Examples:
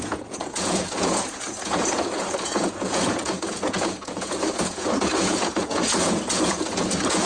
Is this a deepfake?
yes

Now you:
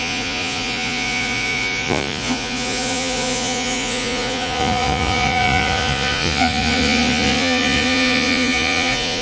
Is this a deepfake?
yes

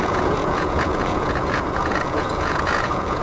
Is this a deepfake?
yes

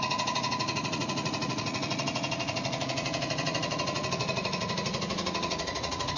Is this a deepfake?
yes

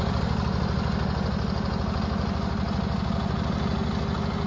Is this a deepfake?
no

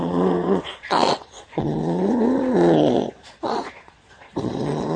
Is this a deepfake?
yes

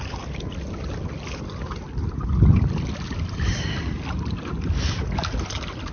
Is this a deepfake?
no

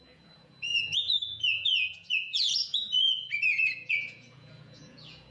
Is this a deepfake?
yes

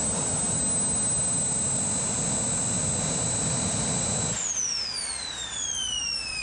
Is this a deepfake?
no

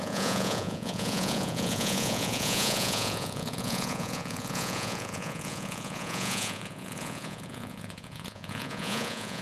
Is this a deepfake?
yes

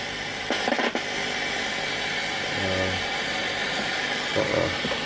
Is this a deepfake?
no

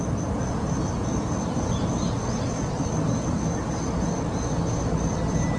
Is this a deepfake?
no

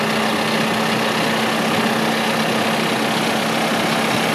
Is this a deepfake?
no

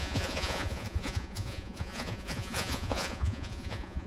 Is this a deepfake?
yes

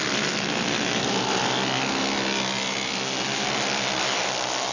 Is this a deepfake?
no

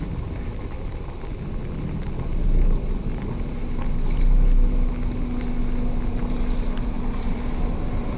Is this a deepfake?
no